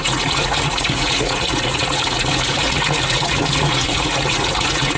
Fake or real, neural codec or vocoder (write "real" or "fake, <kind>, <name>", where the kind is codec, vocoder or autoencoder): fake, vocoder, Vocos